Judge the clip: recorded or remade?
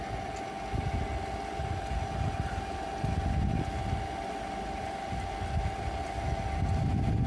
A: recorded